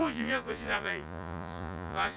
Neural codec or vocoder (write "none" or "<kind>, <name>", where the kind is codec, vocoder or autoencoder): vocoder, Vocos